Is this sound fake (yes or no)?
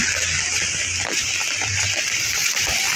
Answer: yes